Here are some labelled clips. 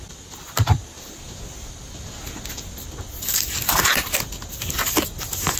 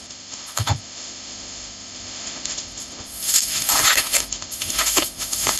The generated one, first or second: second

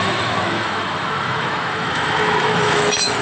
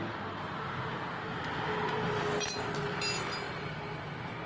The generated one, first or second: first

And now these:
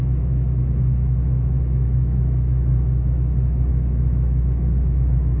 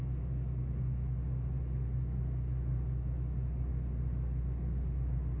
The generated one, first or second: first